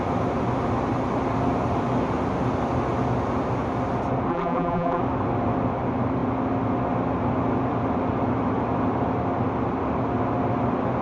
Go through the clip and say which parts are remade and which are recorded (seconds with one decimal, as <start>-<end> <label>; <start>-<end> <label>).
0.0-4.3 recorded; 4.3-5.0 remade; 5.0-11.0 recorded